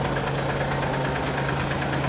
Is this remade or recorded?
recorded